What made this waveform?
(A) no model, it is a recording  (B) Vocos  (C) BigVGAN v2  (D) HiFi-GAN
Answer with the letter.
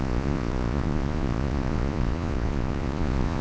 B